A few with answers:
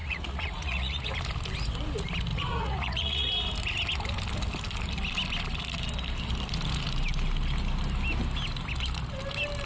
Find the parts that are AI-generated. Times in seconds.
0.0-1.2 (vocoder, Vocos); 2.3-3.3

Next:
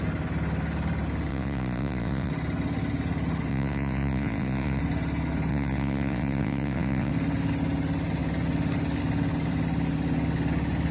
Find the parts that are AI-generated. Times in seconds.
1.3-2.3 (vocoder, Vocos); 3.5-4.8; 5.5-7.1